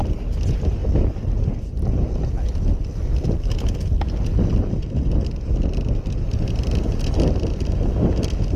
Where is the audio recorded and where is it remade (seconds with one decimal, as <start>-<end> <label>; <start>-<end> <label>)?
0.0-8.6 recorded